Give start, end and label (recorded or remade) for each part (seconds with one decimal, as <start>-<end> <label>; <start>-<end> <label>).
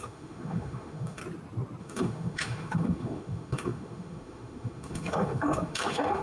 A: 0.0-1.2 remade; 1.2-1.8 recorded; 1.8-6.2 remade